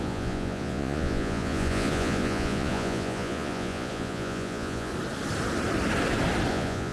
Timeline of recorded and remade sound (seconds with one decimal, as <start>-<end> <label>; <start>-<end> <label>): 0.0-4.9 remade; 4.9-6.5 recorded; 6.5-6.9 remade